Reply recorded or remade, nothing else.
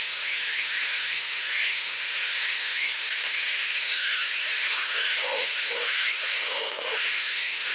remade